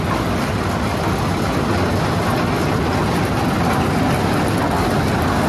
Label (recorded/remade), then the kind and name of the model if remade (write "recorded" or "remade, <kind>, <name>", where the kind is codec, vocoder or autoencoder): recorded